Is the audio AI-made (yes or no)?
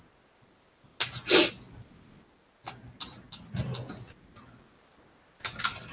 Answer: no